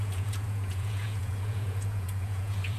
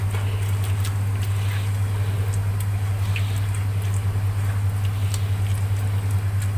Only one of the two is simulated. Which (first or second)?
first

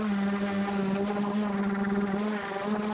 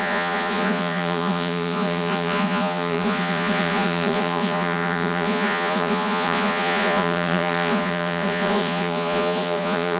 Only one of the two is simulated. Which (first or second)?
second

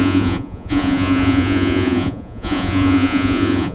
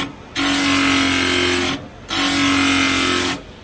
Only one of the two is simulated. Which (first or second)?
first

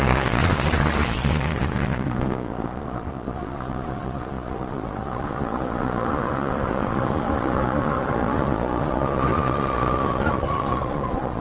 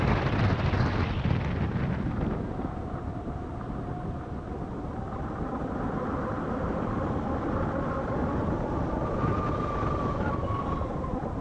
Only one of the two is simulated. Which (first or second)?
first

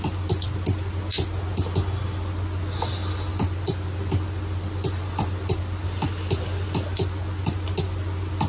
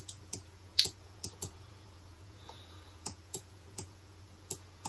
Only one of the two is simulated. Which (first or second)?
second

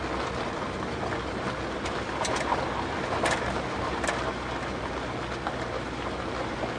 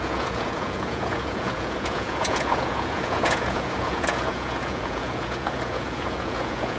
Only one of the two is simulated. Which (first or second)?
second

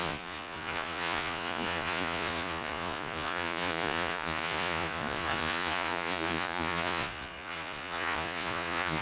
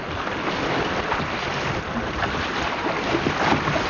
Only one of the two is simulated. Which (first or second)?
first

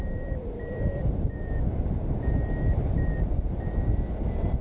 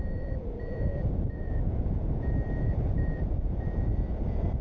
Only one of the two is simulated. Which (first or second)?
second